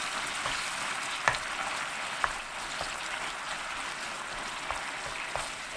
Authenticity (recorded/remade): recorded